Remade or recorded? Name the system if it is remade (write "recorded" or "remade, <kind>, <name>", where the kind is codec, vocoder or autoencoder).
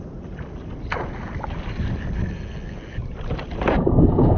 recorded